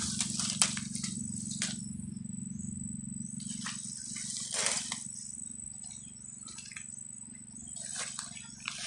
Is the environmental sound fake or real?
real